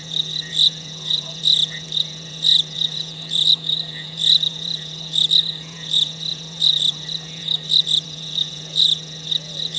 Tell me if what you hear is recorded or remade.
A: remade